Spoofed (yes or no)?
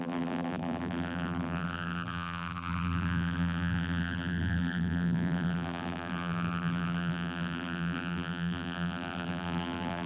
yes